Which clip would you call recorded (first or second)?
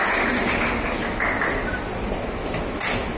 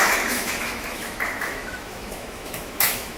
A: first